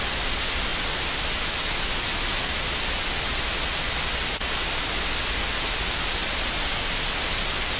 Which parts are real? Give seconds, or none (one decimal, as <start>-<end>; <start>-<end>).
0.0-7.8